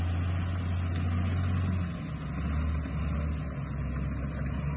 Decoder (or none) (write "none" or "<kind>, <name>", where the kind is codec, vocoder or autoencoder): none